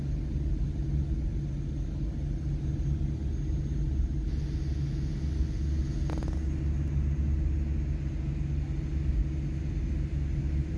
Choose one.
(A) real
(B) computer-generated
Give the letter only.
A